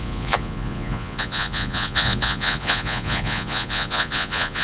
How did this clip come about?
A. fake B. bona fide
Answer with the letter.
A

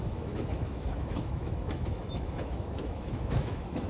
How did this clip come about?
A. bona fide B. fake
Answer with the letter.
B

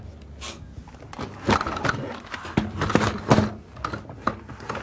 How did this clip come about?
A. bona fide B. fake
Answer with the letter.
A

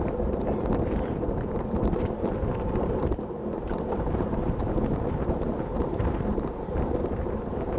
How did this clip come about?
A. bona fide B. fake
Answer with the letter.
B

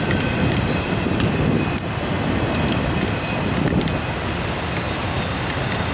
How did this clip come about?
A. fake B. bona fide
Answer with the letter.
B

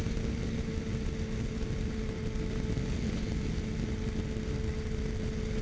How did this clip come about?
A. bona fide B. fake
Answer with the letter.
A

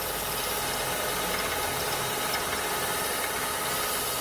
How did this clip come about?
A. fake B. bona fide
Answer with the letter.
B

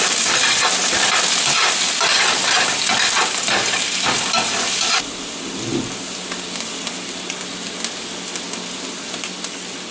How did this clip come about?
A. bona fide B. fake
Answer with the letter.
A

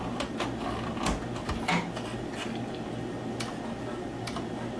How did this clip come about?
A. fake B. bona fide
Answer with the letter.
B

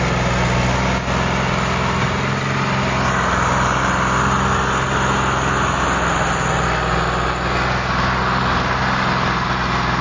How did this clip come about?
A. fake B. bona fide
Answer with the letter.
B